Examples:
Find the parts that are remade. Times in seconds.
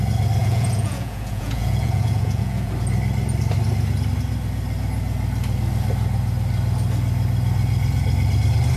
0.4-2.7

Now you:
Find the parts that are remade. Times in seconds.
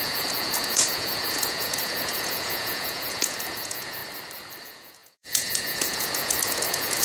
0.0-4.0; 4.6-7.0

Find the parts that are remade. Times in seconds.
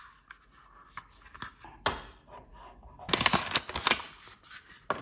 none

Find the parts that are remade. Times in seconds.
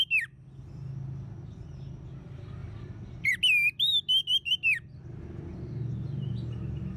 none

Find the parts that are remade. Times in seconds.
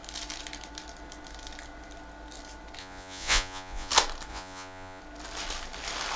2.8-3.9; 4.3-5.0